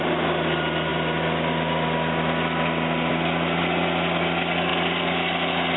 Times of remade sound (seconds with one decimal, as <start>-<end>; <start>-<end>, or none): none